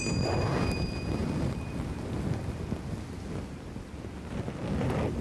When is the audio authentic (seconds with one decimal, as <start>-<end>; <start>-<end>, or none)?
0.0-1.2; 2.1-5.2